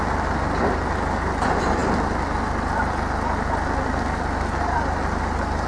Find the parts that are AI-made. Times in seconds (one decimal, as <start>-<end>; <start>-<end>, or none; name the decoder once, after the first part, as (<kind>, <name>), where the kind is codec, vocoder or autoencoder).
none